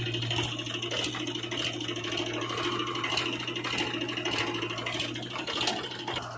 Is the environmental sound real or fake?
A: real